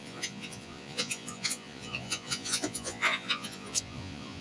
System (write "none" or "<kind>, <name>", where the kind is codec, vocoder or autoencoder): vocoder, Vocos